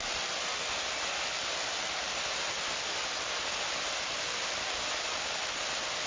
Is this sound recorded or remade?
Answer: recorded